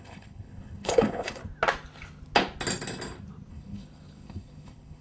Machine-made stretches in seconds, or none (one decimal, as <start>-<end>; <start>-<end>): 0.0-1.4; 3.5-5.0